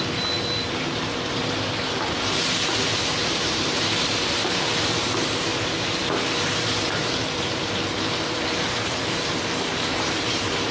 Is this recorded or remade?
remade